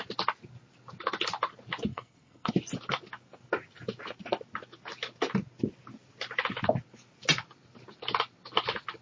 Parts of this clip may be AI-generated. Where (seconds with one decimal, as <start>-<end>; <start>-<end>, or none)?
1.9-2.5